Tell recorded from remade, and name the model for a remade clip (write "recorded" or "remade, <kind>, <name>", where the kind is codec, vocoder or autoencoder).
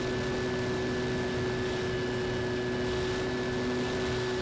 recorded